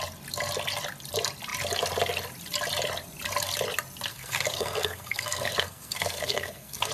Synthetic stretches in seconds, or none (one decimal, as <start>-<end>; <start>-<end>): 4.1-6.9